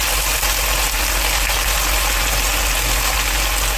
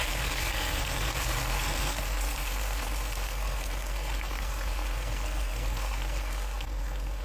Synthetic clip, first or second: second